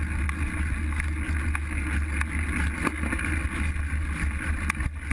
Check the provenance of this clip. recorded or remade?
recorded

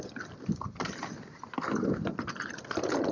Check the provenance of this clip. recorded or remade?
recorded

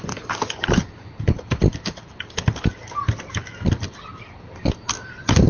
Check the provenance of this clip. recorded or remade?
recorded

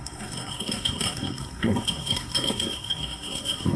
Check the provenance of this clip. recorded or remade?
remade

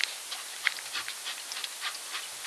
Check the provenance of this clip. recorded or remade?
recorded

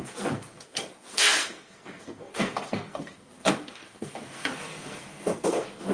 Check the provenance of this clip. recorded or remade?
remade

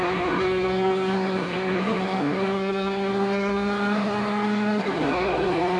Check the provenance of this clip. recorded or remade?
remade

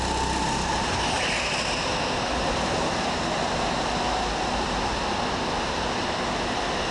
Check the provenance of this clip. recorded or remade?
recorded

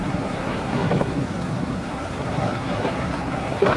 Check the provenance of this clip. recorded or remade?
remade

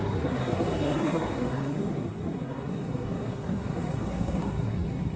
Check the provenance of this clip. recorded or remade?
remade